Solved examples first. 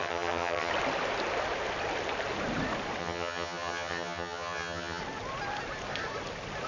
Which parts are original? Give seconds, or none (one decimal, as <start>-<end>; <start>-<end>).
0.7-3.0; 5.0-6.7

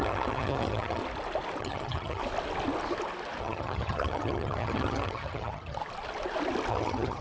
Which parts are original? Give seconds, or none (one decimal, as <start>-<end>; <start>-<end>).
1.0-1.6; 2.2-3.4; 5.8-6.7

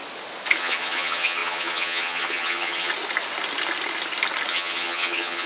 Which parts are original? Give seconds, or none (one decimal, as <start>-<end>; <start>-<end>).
0.0-0.6; 2.9-4.5